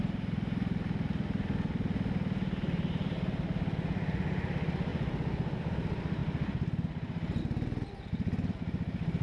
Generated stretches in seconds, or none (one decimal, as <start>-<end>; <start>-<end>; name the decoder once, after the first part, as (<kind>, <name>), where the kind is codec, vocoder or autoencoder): 6.2-7.4 (vocoder, BigVGAN v2)